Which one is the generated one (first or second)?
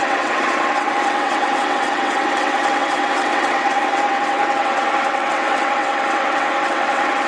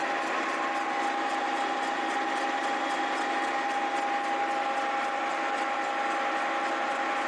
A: first